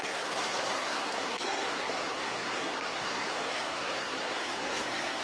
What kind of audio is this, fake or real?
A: fake